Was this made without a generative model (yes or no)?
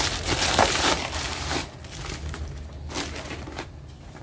yes